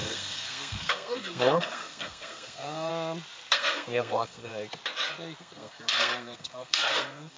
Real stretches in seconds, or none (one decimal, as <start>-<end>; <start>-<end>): 2.9-3.5; 4.5-5.4